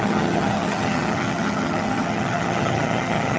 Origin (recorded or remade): remade